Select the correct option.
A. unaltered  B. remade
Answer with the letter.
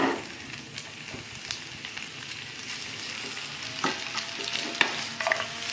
A